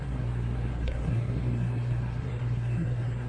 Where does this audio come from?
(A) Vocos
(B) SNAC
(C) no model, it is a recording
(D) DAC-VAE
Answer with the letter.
B